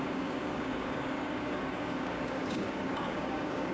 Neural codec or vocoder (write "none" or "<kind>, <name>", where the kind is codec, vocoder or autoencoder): codec, DAC